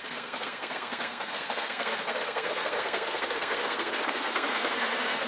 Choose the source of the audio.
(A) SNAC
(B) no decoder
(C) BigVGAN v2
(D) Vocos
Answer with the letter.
A